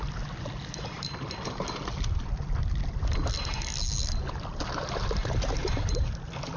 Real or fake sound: real